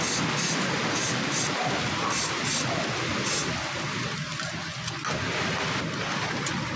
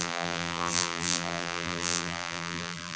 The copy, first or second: second